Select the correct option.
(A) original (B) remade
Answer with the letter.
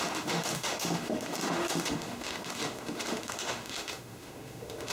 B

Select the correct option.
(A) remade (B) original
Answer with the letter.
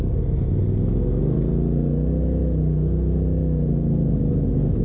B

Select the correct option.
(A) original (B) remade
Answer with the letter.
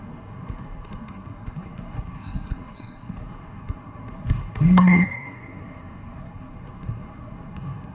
B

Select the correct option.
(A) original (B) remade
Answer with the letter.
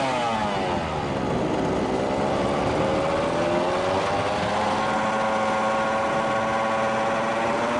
A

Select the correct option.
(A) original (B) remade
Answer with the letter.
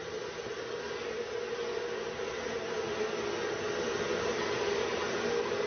A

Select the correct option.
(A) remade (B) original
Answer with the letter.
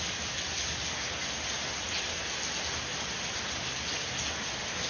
B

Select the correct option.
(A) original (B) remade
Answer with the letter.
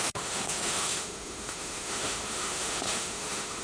B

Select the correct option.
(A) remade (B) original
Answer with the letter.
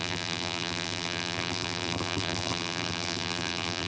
A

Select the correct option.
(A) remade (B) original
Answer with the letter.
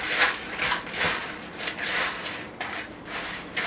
B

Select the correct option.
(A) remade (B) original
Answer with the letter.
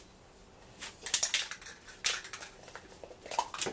B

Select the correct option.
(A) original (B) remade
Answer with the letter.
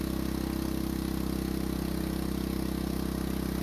A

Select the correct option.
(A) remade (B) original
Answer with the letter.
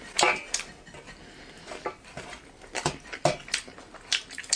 B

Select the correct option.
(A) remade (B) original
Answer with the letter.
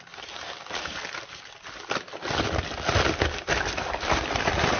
B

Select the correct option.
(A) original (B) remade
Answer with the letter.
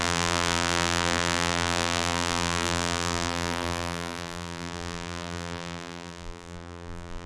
B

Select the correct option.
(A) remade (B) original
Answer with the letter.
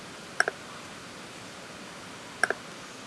B